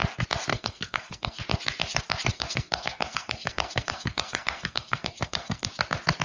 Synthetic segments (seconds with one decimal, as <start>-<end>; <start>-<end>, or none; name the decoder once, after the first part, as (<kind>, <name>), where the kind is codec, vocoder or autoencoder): 0.5-1.4 (codec, SNAC); 2.3-5.7